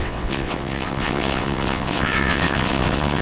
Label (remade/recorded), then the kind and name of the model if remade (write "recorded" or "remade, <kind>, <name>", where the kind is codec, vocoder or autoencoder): remade, vocoder, WaveNeXt